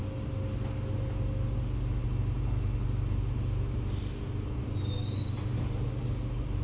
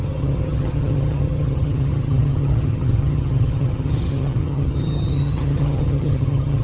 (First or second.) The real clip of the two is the first